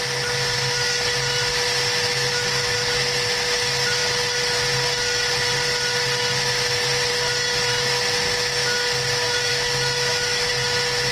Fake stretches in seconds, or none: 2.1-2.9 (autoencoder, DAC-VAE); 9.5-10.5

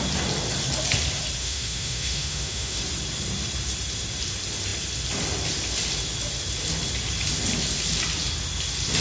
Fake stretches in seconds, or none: 1.4-2.8 (autoencoder, DAC-VAE)

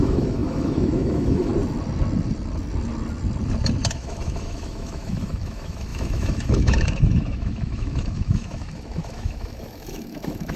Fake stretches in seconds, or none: 0.0-1.5 (autoencoder, DAC-VAE); 3.9-10.6